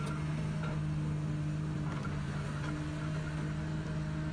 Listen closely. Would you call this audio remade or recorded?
recorded